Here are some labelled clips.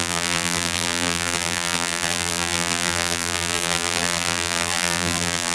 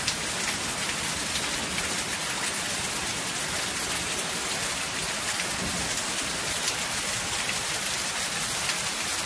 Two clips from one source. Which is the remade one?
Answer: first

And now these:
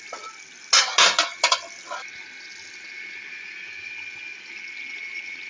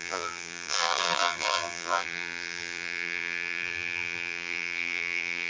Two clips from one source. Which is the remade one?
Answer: second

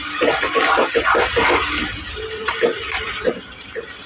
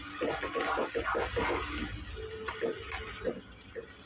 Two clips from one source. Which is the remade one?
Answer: first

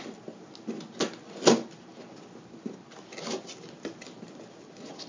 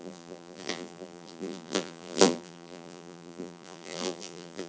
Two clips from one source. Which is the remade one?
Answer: second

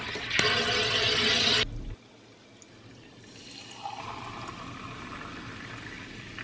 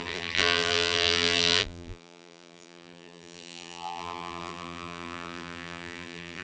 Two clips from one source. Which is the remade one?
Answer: second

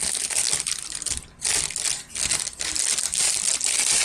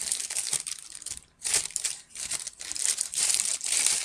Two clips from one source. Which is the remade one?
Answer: second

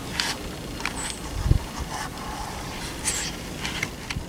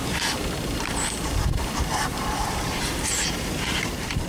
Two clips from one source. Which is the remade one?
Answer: second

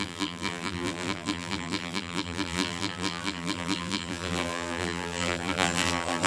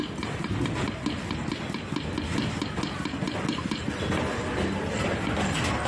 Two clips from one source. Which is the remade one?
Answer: first